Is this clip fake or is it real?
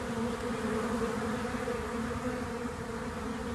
real